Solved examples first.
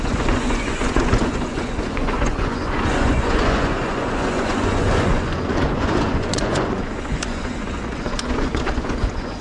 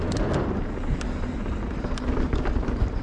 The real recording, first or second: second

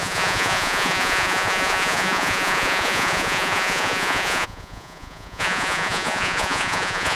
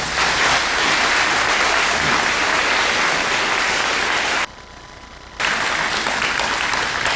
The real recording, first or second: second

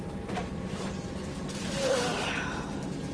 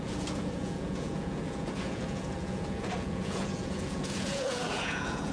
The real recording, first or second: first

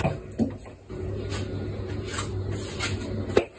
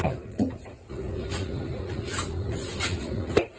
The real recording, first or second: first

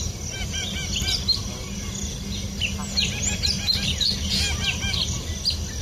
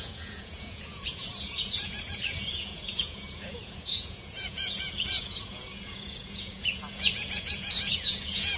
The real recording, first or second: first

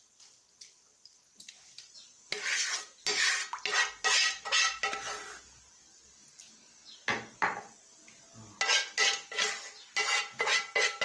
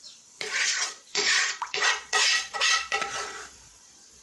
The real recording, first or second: first